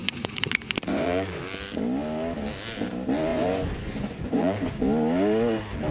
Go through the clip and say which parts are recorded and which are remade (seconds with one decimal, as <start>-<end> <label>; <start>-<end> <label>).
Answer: 0.0-1.4 remade; 1.4-3.3 recorded; 3.3-4.7 remade; 4.7-5.9 recorded